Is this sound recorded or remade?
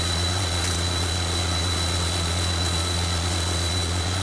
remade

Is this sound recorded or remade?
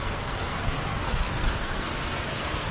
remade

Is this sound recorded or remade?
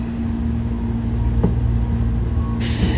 recorded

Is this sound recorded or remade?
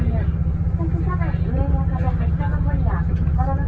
recorded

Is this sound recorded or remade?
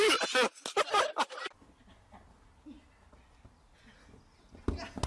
recorded